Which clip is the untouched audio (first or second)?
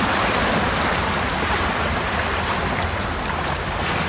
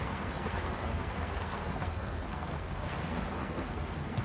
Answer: first